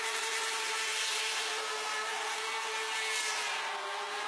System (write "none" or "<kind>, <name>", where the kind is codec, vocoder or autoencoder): none